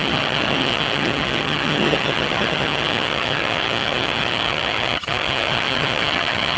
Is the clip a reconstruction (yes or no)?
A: yes